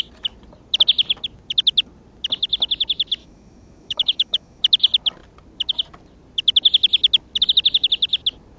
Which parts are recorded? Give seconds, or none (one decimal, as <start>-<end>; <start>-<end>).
0.0-3.2; 4.6-8.6